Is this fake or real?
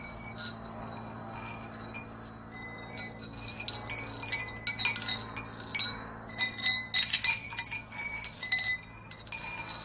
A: real